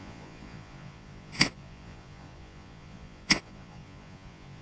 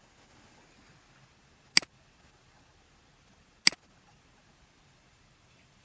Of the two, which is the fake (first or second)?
first